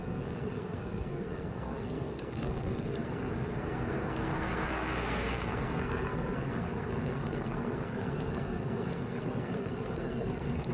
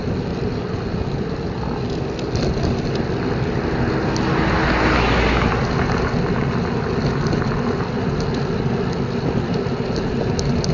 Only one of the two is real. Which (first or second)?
second